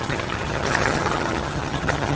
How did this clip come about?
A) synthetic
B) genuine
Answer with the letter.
A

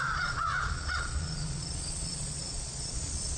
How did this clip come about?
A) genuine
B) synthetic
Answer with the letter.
B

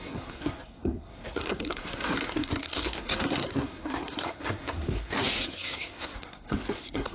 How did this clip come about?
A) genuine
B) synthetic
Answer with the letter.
B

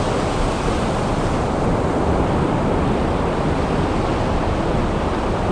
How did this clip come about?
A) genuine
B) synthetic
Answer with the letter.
A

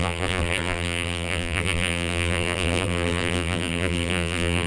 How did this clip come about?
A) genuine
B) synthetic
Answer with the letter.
B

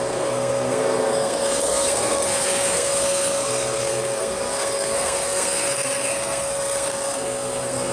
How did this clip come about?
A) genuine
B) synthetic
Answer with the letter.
B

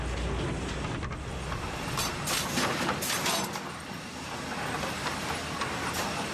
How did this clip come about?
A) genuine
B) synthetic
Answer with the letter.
A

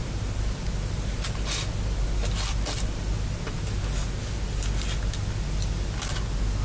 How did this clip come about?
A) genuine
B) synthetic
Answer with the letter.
A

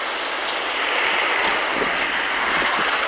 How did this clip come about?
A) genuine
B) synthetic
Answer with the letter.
A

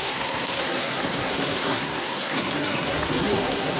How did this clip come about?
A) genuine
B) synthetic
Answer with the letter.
B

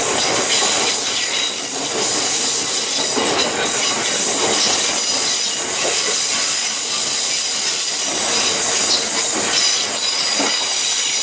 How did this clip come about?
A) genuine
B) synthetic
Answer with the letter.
A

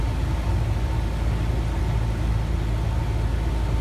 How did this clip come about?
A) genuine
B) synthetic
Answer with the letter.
A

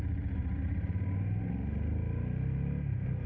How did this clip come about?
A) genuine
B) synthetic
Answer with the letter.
A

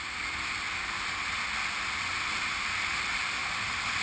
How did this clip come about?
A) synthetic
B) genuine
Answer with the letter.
B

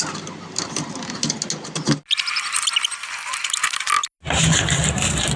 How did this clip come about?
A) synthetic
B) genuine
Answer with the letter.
B